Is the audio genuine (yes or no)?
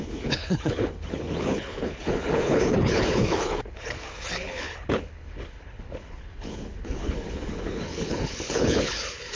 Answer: no